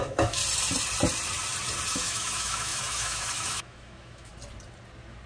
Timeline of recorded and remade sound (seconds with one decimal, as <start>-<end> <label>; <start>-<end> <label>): 0.0-0.4 remade; 0.4-1.9 recorded; 1.9-4.3 remade; 4.3-5.3 recorded